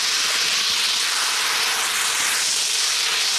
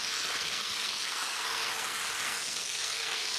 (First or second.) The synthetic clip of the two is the second